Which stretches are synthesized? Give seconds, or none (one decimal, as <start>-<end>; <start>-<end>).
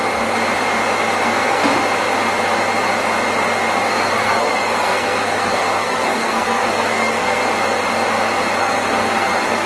1.2-1.6; 3.9-7.4; 8.6-9.7